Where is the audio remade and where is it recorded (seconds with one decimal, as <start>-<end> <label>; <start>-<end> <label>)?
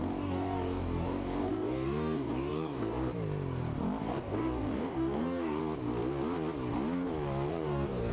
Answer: 0.0-3.1 remade; 3.1-4.0 recorded; 4.0-5.6 remade; 5.6-7.5 recorded; 7.5-8.1 remade